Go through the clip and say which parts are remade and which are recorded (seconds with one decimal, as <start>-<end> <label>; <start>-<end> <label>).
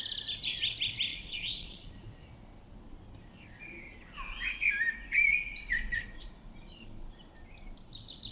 0.0-1.1 recorded; 1.1-1.9 remade; 1.9-8.3 recorded